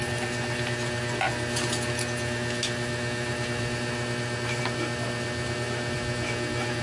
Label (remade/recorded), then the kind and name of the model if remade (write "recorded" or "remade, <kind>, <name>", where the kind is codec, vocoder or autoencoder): recorded